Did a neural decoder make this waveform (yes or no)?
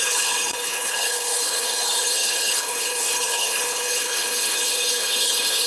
yes